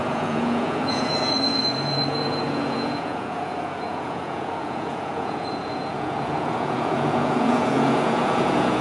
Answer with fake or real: fake